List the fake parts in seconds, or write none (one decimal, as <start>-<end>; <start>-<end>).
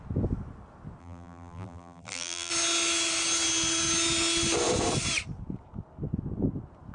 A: 1.0-2.5